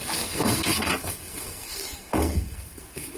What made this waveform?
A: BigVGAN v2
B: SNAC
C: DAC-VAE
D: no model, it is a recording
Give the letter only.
B